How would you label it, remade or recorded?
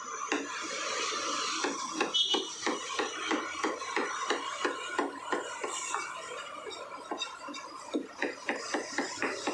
recorded